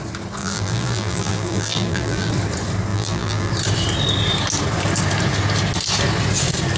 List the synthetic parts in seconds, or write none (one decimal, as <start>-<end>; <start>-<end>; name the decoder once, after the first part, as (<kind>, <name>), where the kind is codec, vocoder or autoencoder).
0.4-2.3 (vocoder, BigVGAN v2); 2.9-3.5